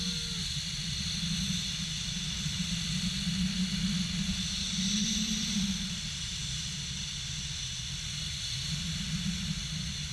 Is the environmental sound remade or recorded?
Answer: recorded